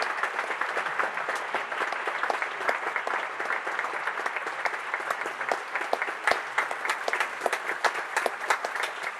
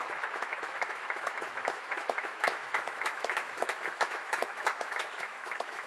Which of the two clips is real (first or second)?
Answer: first